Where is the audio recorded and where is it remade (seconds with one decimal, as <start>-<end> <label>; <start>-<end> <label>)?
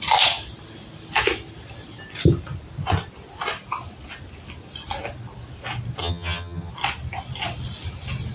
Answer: 0.0-6.0 recorded; 6.0-6.7 remade; 6.7-8.3 recorded